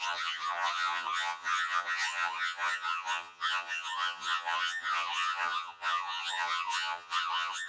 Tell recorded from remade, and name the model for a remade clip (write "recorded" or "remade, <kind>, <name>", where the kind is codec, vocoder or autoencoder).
remade, vocoder, HiFi-GAN